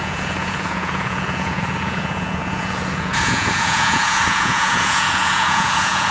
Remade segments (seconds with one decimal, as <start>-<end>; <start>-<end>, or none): 0.0-6.1